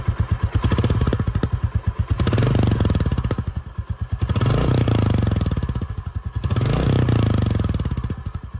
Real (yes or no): yes